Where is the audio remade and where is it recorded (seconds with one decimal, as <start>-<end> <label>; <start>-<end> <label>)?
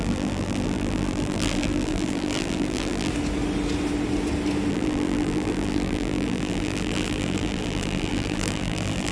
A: 0.0-3.1 remade; 3.1-4.7 recorded; 4.7-9.1 remade